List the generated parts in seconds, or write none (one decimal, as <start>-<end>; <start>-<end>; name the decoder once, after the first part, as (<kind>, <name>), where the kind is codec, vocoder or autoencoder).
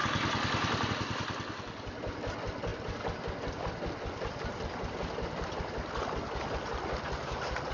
none